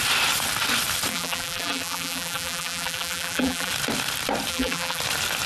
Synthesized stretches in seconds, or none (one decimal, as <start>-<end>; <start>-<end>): 1.1-3.7; 4.5-5.0